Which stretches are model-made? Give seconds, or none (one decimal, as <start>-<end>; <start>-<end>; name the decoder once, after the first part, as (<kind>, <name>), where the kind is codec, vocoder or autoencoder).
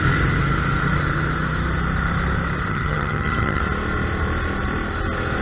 2.7-3.6 (vocoder, HiFi-GAN)